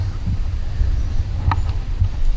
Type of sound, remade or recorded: recorded